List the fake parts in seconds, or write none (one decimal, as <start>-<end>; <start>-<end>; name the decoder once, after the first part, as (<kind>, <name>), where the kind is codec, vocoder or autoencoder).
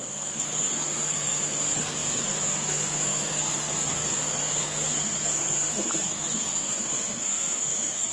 0.0-8.1 (codec, SNAC)